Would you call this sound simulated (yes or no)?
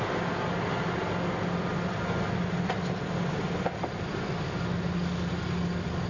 no